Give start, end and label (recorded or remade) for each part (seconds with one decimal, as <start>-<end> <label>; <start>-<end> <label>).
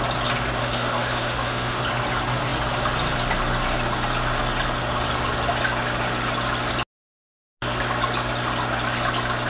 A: 0.0-0.6 recorded; 0.6-1.8 remade; 1.8-9.5 recorded